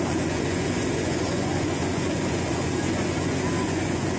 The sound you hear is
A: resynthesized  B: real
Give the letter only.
A